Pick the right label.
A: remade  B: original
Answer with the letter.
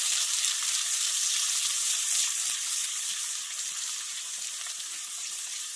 A